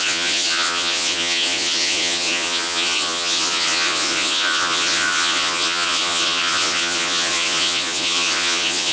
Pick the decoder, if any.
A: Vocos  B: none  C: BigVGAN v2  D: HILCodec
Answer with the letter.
A